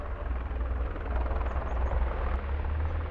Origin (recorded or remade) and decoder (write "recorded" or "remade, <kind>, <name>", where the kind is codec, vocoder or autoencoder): recorded